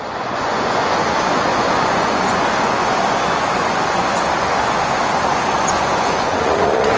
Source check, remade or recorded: remade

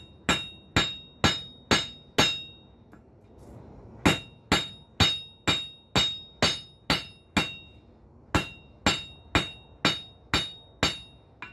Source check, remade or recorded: recorded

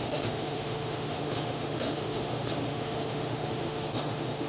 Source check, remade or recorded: remade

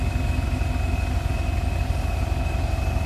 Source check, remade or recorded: recorded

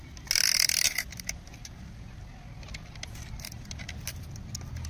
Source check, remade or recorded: recorded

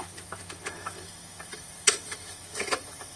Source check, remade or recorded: remade